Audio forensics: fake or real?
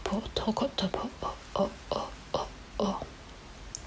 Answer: real